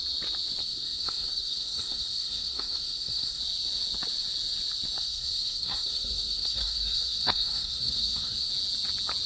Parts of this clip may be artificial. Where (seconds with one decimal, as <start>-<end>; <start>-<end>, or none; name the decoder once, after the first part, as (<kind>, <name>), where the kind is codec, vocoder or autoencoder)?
0.6-3.4 (codec, SNAC); 5.0-8.5